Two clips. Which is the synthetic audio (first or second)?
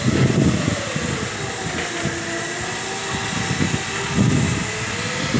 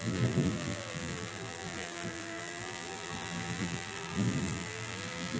second